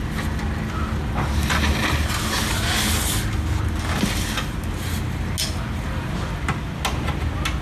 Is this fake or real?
real